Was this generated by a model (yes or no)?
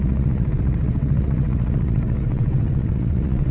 yes